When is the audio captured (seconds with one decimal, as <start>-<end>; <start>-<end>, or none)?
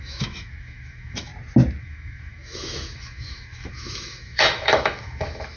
1.3-1.8